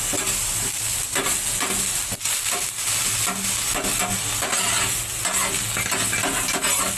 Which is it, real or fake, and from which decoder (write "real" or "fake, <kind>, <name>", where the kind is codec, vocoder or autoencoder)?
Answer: real